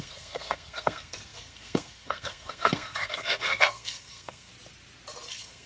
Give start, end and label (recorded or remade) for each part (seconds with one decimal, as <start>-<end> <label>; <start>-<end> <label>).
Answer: 0.0-4.5 remade; 4.5-5.3 recorded; 5.3-5.7 remade